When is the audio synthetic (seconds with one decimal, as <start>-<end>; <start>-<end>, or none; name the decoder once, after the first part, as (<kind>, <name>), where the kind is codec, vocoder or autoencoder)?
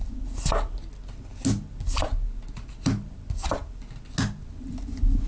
none